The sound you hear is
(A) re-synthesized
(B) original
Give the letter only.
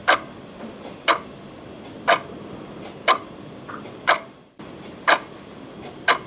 B